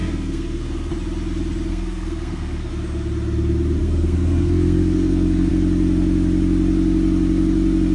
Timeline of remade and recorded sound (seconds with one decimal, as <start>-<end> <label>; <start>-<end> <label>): 0.0-0.9 remade; 0.9-1.7 recorded; 1.7-2.7 remade; 2.7-3.8 recorded; 3.8-5.5 remade; 5.5-7.9 recorded